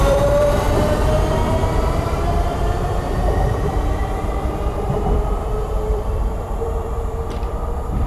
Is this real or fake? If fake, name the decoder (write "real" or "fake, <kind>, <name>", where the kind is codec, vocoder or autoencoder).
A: fake, vocoder, BigVGAN v2